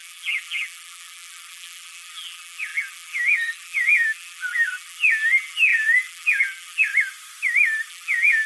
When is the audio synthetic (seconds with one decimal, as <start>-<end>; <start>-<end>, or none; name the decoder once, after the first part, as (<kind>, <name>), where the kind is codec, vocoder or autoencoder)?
0.0-6.9 (vocoder, BigVGAN v2); 7.9-8.5